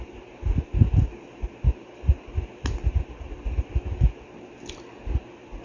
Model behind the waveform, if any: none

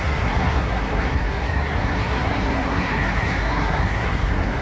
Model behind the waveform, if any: codec, SNAC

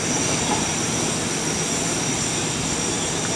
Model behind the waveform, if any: vocoder, BigVGAN v2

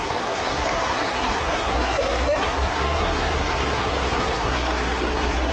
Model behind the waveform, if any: codec, SNAC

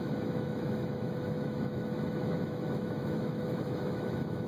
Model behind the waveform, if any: autoencoder, DAC-VAE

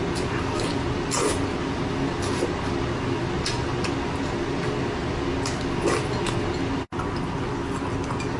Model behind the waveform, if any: none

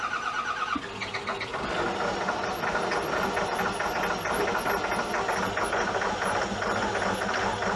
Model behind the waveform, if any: none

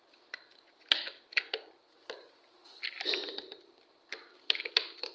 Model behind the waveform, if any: none